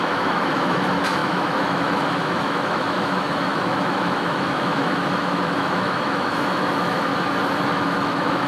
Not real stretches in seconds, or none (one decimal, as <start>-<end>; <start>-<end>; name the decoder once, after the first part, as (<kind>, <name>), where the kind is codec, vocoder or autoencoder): 0.0-7.1 (autoencoder, DAC-VAE); 7.7-8.5